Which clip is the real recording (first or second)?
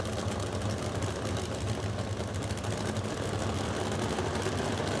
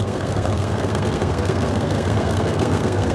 first